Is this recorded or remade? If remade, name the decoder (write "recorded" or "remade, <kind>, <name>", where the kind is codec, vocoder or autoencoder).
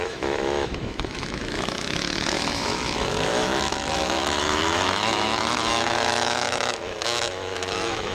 remade, autoencoder, DAC-VAE